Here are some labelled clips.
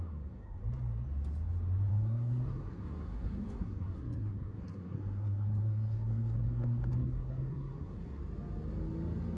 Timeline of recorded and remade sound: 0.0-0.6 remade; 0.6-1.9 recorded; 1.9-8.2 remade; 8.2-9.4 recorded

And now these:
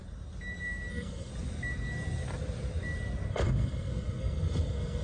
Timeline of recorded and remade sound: 0.0-0.9 recorded; 0.9-1.3 remade; 1.3-3.3 recorded; 3.3-5.0 remade

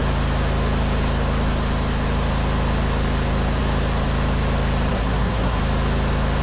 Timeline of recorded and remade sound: 0.0-4.9 recorded; 4.9-5.6 remade; 5.6-6.4 recorded

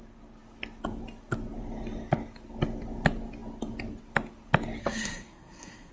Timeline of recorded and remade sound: 0.0-4.8 recorded; 4.8-5.9 remade